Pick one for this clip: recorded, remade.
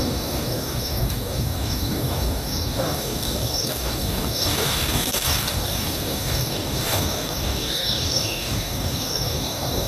remade